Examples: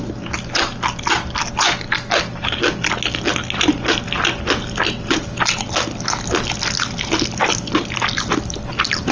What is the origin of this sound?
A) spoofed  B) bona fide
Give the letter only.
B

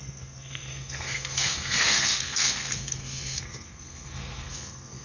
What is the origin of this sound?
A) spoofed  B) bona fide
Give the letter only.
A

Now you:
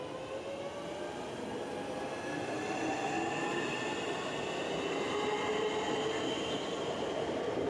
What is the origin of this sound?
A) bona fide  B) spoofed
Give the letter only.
A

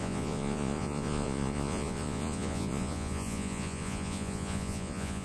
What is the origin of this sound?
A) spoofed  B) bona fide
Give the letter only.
A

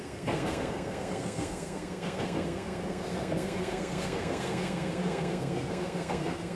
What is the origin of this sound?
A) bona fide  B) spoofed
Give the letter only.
B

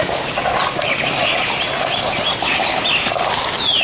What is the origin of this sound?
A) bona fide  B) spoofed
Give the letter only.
A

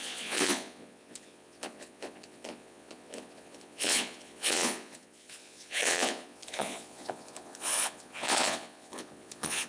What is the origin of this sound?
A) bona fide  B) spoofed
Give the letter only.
B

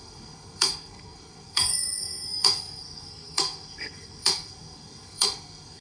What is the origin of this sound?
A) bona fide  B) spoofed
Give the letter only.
B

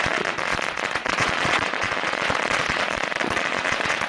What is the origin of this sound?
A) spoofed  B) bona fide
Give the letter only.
A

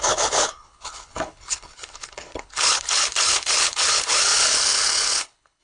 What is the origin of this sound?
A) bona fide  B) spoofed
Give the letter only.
B